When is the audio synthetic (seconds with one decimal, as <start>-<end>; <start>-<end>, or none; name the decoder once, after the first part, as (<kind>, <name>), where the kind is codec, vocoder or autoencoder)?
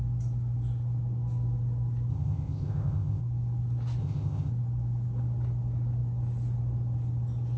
2.1-3.2 (codec, ZipCodec); 4.0-4.5